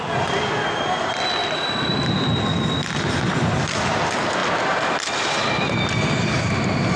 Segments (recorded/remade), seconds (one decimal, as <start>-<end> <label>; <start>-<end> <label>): 0.0-7.0 recorded